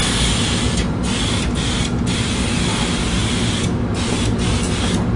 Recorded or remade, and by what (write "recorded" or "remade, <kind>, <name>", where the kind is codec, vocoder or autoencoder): recorded